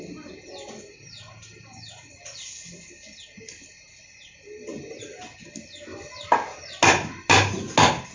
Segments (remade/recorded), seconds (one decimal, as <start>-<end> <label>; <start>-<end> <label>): 0.0-8.1 recorded